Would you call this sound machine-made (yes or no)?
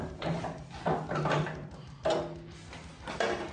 no